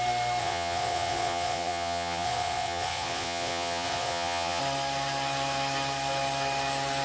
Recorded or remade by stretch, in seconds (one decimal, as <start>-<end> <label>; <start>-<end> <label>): 0.0-0.4 recorded; 0.4-4.6 remade; 4.6-7.0 recorded